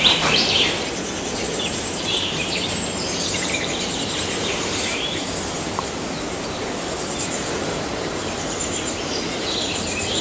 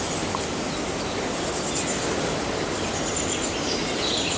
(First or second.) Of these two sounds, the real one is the second